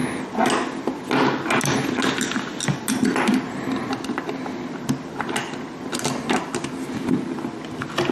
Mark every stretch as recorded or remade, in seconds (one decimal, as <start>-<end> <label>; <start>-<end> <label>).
0.0-8.1 recorded